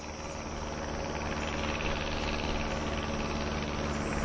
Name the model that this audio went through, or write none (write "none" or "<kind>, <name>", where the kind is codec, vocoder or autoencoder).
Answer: none